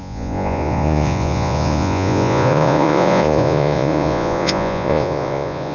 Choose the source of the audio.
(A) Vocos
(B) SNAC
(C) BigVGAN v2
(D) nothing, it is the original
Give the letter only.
A